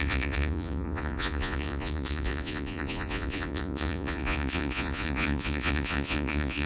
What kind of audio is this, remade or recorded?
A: remade